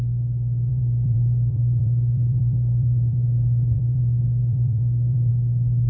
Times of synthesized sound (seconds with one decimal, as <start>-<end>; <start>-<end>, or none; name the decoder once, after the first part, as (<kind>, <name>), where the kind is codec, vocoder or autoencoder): 0.7-4.0 (vocoder, BigVGAN v2); 4.4-5.3